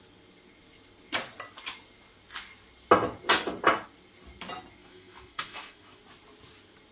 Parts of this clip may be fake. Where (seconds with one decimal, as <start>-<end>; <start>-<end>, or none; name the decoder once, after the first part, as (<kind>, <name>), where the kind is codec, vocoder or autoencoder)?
4.8-6.0 (autoencoder, DAC-VAE)